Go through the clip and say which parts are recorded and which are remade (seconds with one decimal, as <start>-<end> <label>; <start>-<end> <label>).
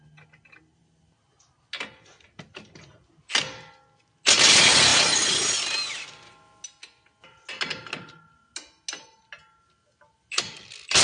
0.0-11.0 recorded